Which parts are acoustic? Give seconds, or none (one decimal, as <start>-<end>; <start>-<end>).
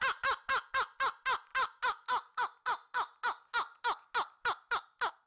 0.0-5.3